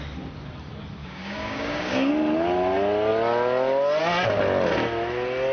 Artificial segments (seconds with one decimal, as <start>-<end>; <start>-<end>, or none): 1.0-2.1